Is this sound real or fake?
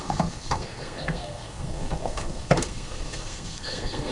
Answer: fake